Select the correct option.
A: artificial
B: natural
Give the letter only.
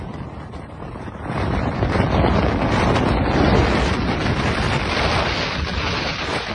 B